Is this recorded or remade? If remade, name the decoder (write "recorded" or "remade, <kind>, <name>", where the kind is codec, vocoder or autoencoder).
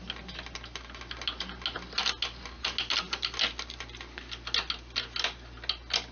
recorded